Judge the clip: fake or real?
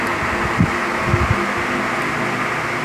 real